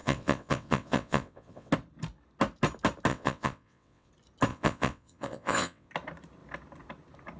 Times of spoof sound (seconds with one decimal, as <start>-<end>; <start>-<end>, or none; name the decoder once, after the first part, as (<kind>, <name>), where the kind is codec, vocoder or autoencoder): 0.0-1.7 (vocoder, WaveNeXt); 3.1-4.1; 4.5-5.9